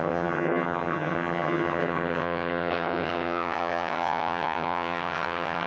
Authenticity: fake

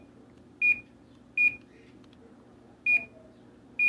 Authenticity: real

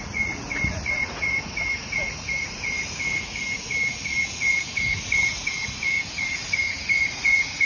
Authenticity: fake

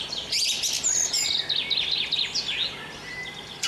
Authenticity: real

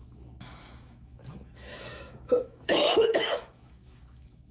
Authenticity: fake